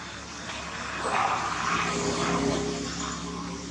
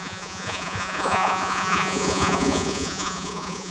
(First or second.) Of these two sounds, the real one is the first